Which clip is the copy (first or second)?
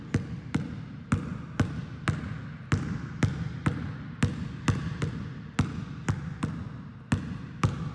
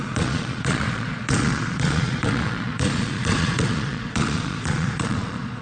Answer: second